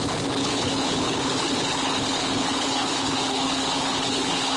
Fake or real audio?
fake